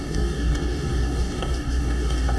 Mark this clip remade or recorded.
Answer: remade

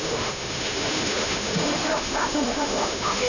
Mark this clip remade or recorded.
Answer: remade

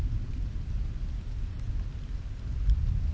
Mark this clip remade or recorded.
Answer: recorded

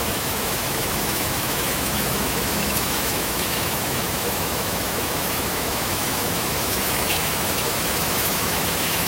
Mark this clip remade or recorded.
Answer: remade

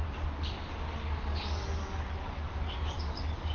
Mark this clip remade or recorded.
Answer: remade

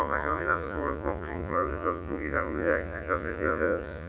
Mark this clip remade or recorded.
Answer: remade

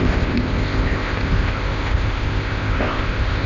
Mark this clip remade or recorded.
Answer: remade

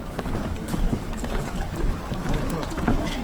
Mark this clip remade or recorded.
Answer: remade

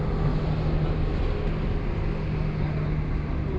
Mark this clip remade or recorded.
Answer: recorded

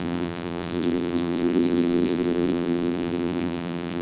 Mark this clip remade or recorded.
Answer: remade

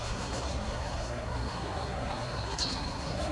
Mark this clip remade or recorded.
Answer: remade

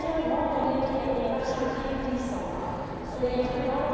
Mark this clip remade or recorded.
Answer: recorded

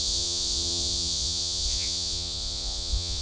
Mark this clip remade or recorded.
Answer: remade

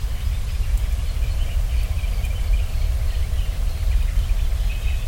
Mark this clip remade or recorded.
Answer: recorded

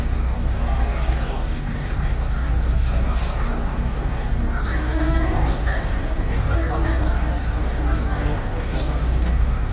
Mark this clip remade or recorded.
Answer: remade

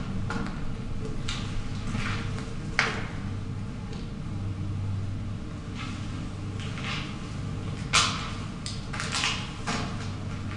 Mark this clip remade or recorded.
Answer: recorded